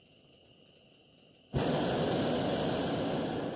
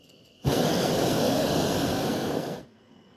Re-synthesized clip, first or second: second